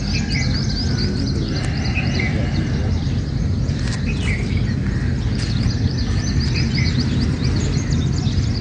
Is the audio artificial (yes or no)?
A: no